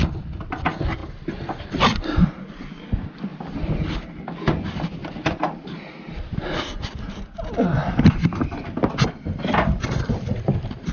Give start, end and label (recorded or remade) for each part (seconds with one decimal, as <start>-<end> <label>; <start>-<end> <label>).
0.0-7.8 recorded; 7.8-10.9 remade